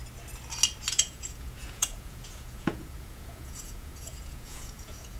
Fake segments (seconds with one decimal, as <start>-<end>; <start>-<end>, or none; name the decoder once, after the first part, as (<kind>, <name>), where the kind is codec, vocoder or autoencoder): 0.9-5.2 (vocoder, Vocos)